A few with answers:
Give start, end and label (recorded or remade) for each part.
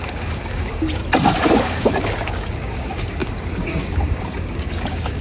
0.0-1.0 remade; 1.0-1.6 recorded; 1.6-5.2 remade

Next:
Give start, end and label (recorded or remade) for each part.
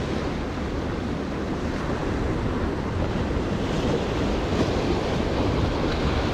0.0-6.3 recorded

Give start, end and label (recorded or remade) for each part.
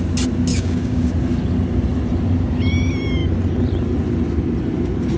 0.0-0.5 recorded; 0.5-1.1 remade; 1.1-5.2 recorded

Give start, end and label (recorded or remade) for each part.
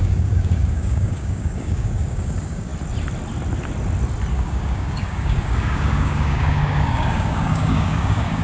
0.0-2.7 remade; 2.7-4.3 recorded; 4.3-8.4 remade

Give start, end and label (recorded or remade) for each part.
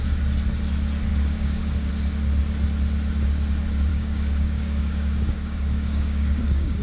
0.0-1.1 recorded; 1.1-1.9 remade; 1.9-3.9 recorded; 3.9-6.8 remade